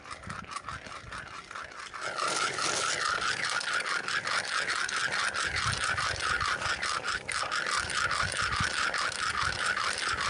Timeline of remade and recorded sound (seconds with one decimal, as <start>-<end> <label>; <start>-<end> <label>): 0.0-10.3 recorded